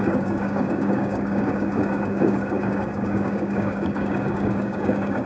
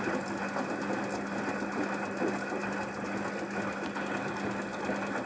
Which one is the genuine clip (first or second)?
second